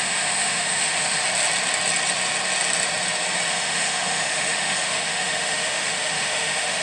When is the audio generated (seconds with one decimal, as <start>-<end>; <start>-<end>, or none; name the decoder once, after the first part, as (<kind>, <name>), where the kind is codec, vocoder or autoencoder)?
0.0-1.2 (autoencoder, DAC-VAE); 3.5-6.8